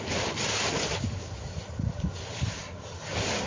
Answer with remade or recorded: recorded